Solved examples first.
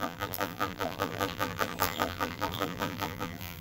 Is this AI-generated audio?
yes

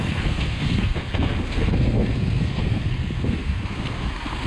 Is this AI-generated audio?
yes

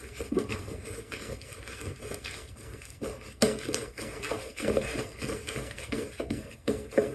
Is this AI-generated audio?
yes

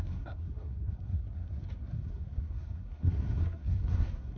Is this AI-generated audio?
yes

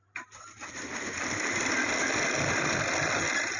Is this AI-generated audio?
no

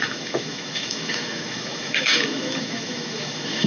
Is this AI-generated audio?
yes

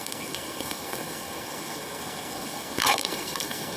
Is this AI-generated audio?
yes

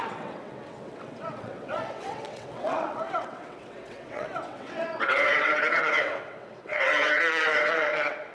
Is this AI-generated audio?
yes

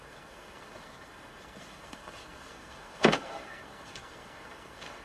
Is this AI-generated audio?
yes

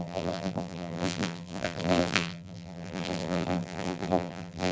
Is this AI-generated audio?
yes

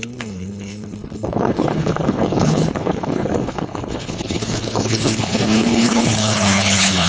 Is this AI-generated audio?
yes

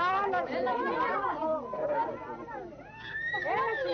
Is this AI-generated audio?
no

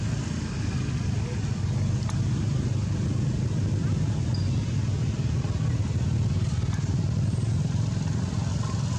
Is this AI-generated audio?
no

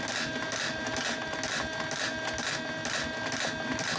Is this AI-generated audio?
no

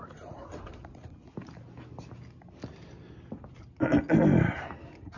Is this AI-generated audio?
no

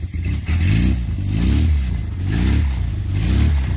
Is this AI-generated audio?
no